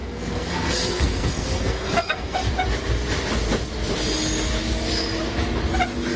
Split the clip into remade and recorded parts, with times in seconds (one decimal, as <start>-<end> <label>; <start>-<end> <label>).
0.0-2.5 remade; 2.5-6.2 recorded